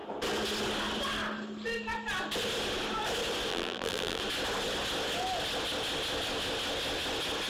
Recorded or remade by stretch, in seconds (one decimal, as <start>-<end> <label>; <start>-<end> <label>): 0.0-3.5 recorded; 3.5-4.2 remade; 4.2-7.5 recorded